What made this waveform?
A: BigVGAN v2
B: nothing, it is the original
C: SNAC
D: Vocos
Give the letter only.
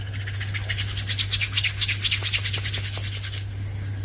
B